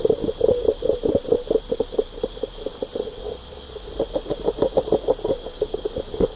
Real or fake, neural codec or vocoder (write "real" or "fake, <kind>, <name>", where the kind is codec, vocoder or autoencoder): real